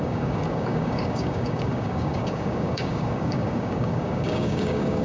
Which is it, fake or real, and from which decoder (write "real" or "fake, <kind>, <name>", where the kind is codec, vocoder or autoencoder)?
fake, codec, DAC